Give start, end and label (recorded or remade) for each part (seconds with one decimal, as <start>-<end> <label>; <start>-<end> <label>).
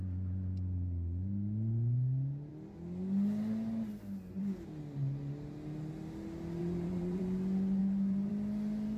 0.0-6.6 recorded; 6.6-7.2 remade; 7.2-7.8 recorded; 7.8-8.3 remade; 8.3-9.0 recorded